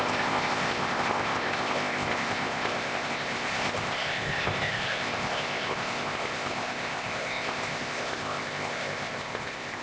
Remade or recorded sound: remade